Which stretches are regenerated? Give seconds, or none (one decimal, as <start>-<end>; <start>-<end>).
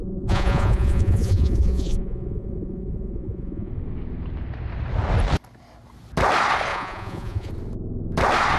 0.0-3.7; 6.7-7.5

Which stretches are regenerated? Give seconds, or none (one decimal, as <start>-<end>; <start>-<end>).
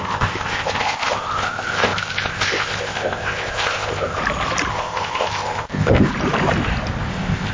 0.0-4.2; 4.7-6.1; 7.1-7.5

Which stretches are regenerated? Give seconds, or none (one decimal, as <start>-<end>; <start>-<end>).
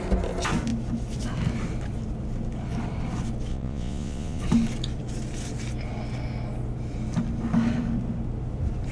3.5-4.4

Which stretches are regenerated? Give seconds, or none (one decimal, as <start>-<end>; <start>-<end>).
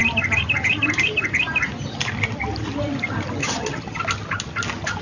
3.4-4.0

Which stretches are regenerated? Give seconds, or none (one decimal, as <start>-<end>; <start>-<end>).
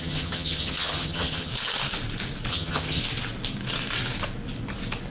0.0-1.5; 2.5-3.0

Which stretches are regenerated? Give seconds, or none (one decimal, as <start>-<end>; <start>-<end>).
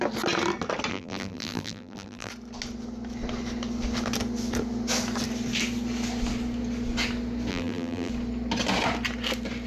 0.9-2.3; 7.5-8.1